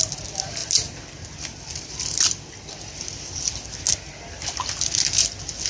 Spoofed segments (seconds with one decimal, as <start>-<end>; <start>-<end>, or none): none